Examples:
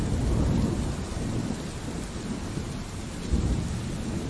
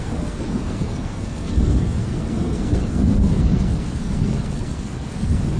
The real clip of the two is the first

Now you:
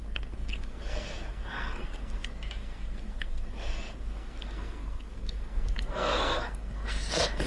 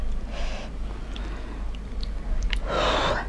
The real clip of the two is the second